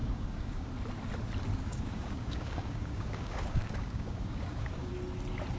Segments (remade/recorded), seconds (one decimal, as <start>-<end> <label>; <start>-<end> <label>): 0.0-0.7 remade; 0.7-1.5 recorded; 1.5-4.9 remade; 4.9-5.6 recorded